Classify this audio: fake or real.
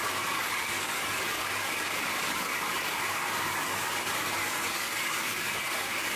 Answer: fake